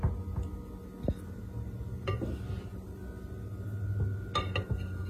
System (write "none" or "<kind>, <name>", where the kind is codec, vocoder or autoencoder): none